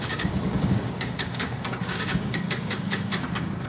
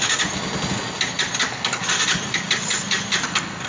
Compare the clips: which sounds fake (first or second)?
first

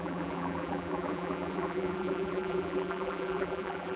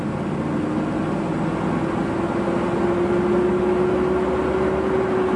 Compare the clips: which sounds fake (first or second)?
first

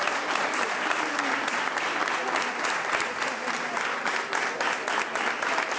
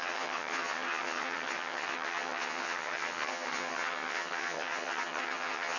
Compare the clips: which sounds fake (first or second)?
second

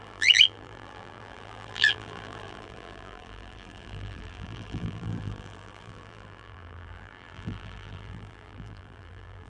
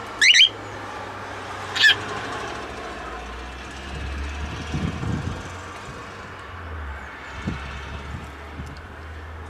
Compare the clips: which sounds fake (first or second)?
first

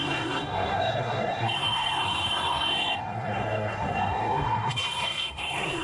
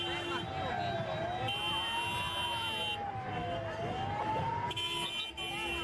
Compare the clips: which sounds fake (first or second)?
first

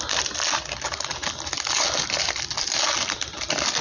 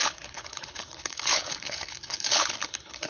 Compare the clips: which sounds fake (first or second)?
second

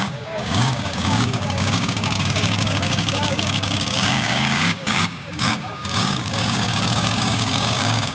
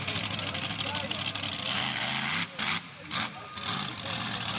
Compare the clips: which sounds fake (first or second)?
first